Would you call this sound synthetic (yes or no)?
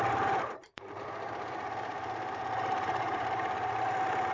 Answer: yes